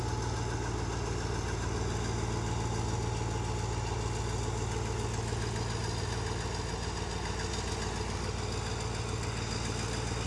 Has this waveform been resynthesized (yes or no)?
no